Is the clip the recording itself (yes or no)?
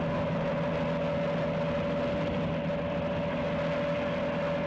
yes